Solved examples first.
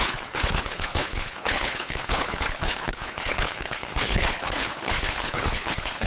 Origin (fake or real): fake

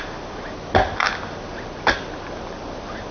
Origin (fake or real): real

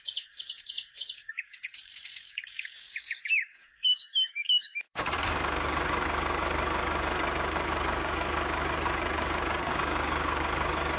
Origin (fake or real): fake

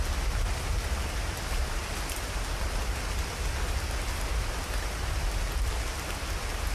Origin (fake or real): real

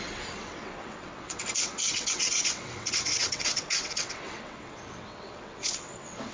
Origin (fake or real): fake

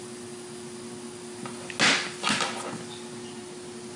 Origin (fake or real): real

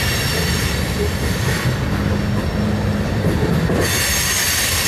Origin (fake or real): real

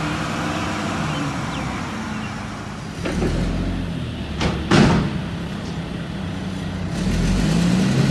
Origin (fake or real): real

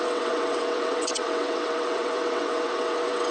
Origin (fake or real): fake